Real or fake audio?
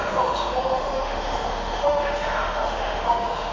fake